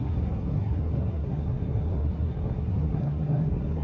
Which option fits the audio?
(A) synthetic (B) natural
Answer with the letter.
A